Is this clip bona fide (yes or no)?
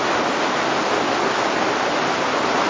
yes